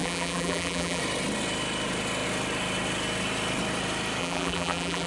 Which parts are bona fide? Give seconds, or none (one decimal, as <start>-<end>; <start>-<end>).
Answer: 1.0-4.2